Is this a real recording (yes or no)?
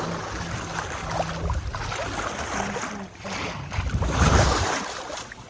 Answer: yes